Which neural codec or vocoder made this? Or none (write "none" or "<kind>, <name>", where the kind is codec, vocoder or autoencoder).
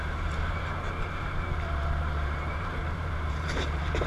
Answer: vocoder, BigVGAN v2